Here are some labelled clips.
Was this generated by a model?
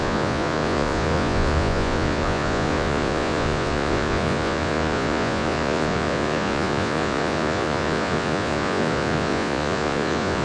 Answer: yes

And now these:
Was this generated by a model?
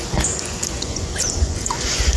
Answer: yes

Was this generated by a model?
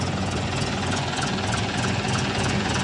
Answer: yes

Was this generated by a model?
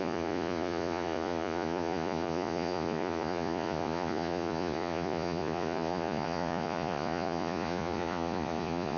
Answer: yes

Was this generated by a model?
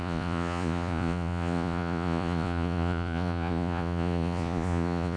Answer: yes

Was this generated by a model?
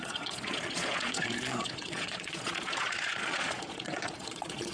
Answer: yes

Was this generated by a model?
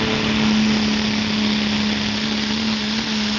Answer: no